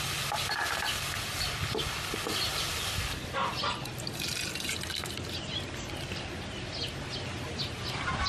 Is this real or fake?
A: real